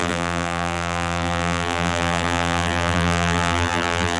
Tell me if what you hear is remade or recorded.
remade